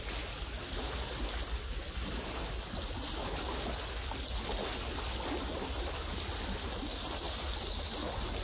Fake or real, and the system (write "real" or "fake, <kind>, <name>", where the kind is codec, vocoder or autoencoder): real